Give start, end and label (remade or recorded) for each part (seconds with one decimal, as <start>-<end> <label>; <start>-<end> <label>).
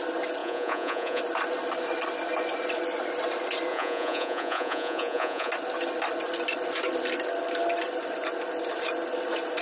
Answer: 0.0-0.4 recorded; 0.4-1.2 remade; 1.2-3.7 recorded; 3.7-5.5 remade; 5.5-9.6 recorded